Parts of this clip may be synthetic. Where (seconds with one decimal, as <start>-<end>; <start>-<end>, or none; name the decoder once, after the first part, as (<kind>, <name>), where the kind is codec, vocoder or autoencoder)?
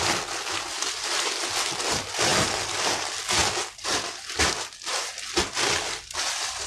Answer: none